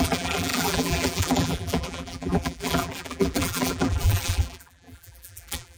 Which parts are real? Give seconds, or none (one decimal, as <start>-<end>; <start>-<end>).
none

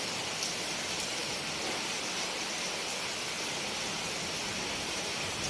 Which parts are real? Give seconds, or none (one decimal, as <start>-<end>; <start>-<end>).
0.0-5.5

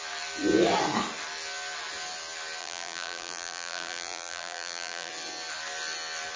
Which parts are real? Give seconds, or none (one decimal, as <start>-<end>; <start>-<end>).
0.0-2.6; 5.1-6.4

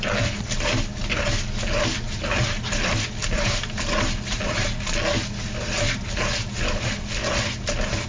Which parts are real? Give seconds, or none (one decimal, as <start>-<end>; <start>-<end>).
0.0-8.1

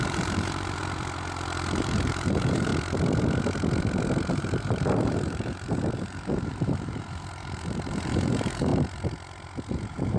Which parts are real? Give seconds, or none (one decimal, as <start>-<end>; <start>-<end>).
0.8-1.8; 2.7-4.3; 8.7-9.7

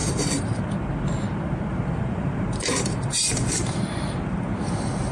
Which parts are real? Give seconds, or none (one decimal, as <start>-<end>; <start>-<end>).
0.6-1.7